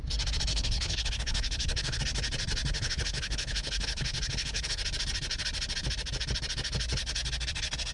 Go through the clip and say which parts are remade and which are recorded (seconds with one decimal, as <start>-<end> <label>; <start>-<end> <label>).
0.0-0.5 recorded; 0.5-2.0 remade; 2.0-2.7 recorded; 2.7-4.8 remade; 4.8-7.9 recorded